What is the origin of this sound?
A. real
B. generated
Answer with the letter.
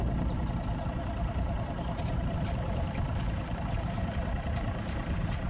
B